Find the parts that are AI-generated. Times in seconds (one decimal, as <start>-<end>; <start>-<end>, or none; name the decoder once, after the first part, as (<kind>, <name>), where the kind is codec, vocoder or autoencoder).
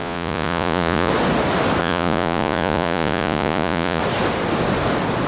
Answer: 0.0-1.1 (vocoder, Vocos); 1.8-4.0